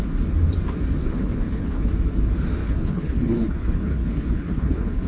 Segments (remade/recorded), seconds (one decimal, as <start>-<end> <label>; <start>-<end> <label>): 0.0-1.0 recorded; 1.0-1.9 remade; 1.9-2.6 recorded; 2.6-5.1 remade